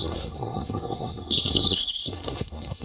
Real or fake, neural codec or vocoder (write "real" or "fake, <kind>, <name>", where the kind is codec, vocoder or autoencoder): fake, codec, SNAC